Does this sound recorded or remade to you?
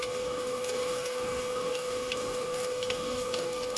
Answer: remade